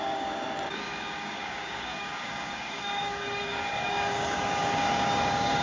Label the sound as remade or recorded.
remade